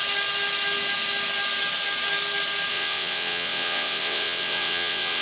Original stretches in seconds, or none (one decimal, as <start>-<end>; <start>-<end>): 0.0-2.7